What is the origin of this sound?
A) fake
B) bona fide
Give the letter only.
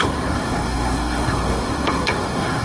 A